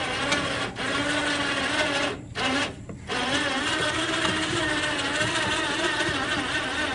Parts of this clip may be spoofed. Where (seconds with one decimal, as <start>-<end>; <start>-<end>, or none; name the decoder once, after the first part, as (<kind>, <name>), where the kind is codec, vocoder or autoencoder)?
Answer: none